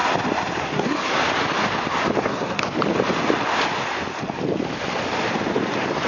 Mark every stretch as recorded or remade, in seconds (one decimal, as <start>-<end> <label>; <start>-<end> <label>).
0.0-0.6 recorded; 0.6-1.2 remade; 1.2-2.2 recorded; 2.2-2.6 remade; 2.6-6.1 recorded